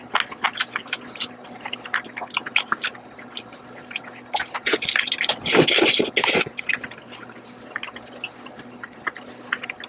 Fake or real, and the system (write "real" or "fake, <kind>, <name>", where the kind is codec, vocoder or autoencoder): real